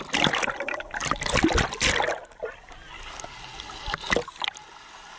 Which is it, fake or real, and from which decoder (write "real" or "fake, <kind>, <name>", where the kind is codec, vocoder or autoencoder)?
real